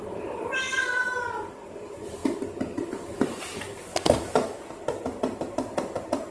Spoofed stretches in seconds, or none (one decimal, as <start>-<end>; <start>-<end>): 3.9-4.6